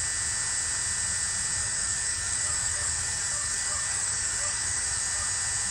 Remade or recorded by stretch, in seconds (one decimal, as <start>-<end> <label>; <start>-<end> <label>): 0.0-1.6 recorded; 1.6-5.0 remade; 5.0-5.7 recorded